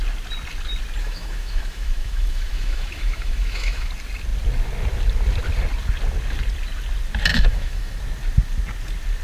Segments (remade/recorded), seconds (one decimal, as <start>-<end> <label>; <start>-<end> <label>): 0.0-1.0 recorded; 1.0-3.9 remade; 3.9-7.3 recorded; 7.3-8.0 remade; 8.0-9.2 recorded